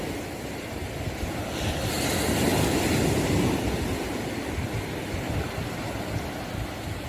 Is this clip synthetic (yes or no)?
no